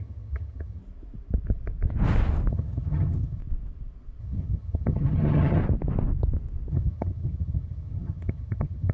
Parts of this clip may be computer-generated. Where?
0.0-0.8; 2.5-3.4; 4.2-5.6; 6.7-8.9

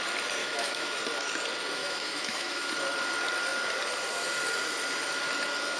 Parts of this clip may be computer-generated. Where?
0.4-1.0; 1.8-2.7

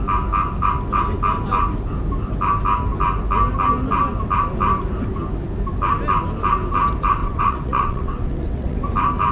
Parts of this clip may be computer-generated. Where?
7.2-8.8

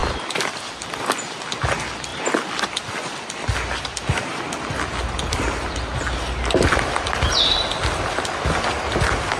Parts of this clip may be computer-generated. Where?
0.0-1.3